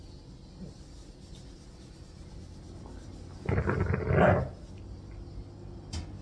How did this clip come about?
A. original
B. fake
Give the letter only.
A